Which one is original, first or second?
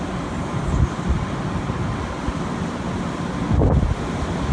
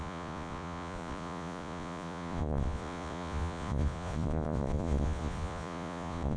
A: first